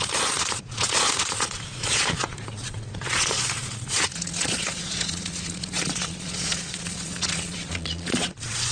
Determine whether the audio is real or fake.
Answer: fake